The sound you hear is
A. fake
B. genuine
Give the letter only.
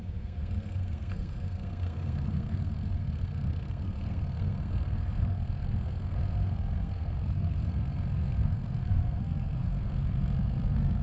A